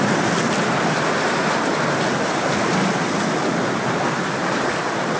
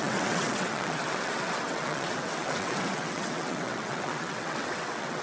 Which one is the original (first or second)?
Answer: first